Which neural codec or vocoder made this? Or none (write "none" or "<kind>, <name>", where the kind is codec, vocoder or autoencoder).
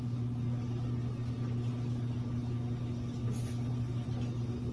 none